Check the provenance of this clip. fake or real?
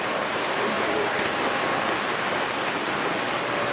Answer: real